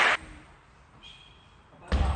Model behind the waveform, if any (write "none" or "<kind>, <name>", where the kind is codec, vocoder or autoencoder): none